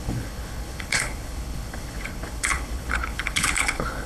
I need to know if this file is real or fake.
fake